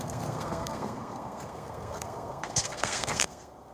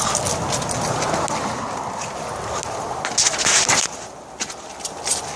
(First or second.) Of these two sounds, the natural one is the second